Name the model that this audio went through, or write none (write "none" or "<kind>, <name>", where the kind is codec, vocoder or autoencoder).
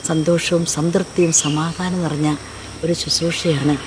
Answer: none